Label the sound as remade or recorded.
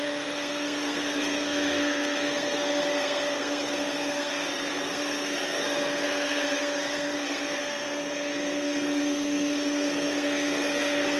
remade